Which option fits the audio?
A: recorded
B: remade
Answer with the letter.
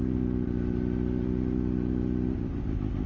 A